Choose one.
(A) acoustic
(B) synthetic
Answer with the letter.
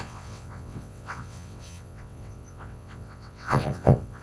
B